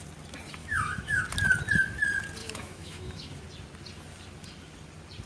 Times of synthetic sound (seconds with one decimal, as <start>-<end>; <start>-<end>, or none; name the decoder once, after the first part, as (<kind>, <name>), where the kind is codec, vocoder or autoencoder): 0.6-1.2 (autoencoder, DAC-VAE); 2.4-3.4